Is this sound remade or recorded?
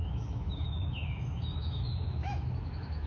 remade